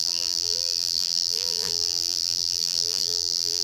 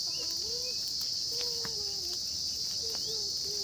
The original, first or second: second